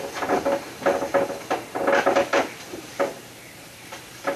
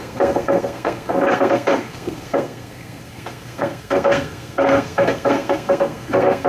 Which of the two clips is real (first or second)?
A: first